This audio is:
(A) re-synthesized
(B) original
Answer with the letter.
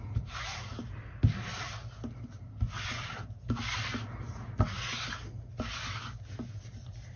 B